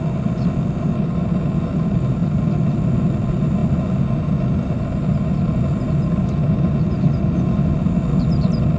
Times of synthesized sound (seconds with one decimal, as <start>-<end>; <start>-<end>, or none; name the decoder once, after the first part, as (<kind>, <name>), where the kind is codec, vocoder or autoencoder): none